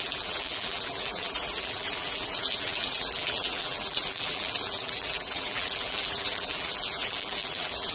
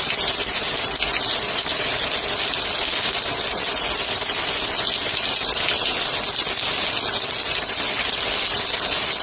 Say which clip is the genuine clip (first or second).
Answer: second